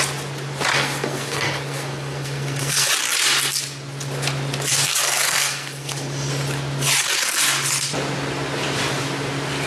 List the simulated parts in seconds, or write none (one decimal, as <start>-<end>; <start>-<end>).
0.7-2.9; 4.9-6.3